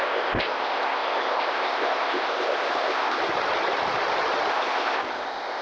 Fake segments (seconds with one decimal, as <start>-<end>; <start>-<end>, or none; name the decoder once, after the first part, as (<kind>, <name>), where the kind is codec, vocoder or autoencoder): 0.0-3.2 (codec, ZipCodec); 4.5-5.6